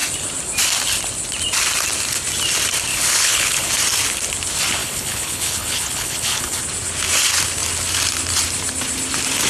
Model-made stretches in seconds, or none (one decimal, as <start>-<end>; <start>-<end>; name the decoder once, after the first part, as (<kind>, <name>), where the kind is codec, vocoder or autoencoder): 2.9-3.7 (codec, HILCodec); 4.8-6.6